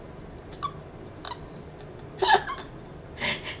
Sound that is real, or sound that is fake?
real